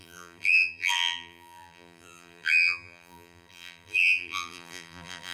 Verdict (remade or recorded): remade